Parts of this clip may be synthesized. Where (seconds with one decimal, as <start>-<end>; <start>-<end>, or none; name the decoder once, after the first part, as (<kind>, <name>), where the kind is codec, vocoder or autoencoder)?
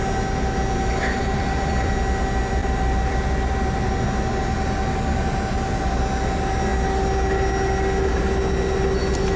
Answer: 1.2-1.9 (vocoder, BigVGAN v2); 2.6-4.0